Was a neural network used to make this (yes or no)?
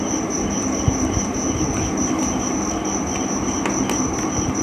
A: no